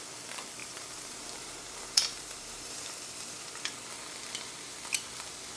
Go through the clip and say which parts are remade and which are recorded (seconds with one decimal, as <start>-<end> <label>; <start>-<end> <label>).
0.0-0.6 recorded; 0.6-3.6 remade; 3.6-5.6 recorded